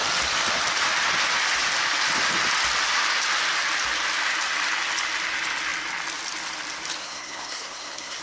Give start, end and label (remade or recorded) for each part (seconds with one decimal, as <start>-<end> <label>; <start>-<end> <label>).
0.0-7.0 recorded; 7.0-8.2 remade